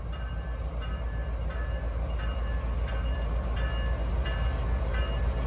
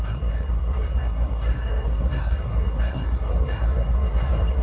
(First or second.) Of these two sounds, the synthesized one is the second